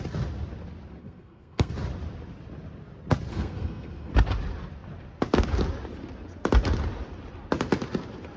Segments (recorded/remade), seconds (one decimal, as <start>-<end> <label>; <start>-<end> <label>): 0.0-1.0 recorded; 1.0-1.7 remade; 1.7-3.3 recorded; 3.3-4.1 remade; 4.1-8.4 recorded